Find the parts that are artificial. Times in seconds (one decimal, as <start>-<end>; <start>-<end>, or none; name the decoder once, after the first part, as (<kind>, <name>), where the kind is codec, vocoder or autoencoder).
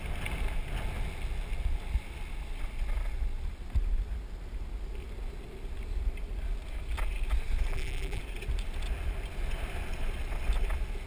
7.7-8.2 (vocoder, BigVGAN v2)